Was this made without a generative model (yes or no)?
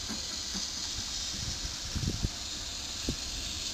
yes